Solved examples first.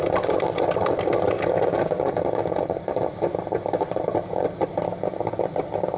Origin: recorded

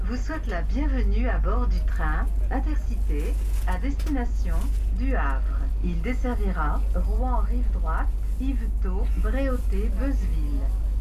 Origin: recorded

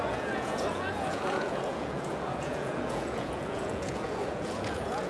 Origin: remade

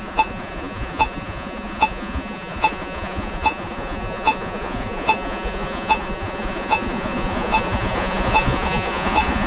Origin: remade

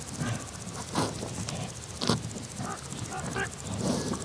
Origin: recorded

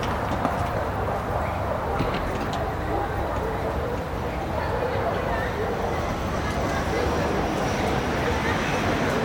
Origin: recorded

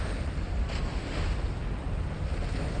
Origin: recorded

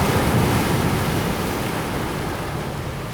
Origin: recorded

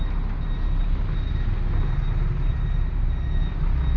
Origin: recorded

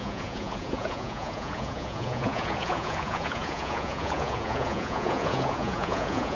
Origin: remade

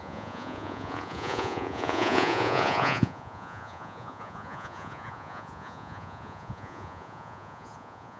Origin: remade